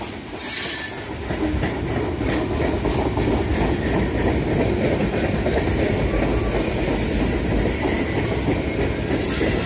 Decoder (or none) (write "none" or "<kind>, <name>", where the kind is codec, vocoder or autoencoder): none